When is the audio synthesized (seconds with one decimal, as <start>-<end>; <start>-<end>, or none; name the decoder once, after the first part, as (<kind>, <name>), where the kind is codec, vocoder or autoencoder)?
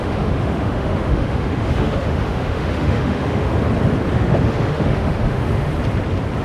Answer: 0.0-3.5 (autoencoder, DAC-VAE); 4.1-5.7